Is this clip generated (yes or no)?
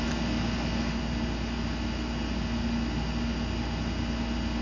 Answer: no